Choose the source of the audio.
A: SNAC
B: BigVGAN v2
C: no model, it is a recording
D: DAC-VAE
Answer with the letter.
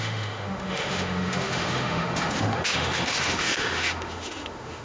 D